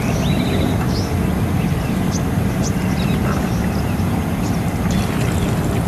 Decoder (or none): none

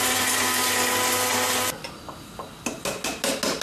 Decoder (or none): none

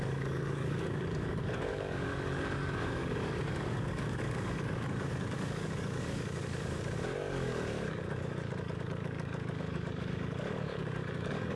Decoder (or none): codec, DAC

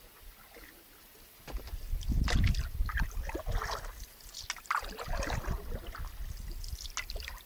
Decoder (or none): none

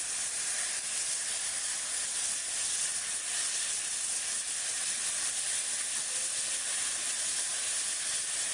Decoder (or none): none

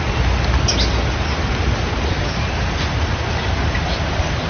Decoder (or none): none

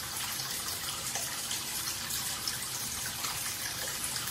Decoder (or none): vocoder, BigVGAN v2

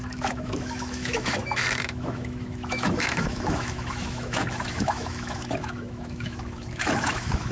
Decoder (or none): autoencoder, DAC-VAE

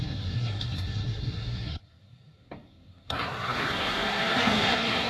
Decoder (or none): codec, SNAC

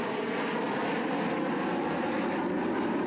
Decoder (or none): none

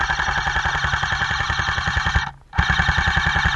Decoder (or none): none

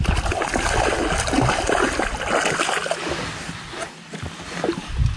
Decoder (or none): none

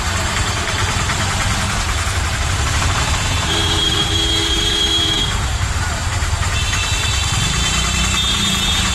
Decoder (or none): vocoder, BigVGAN v2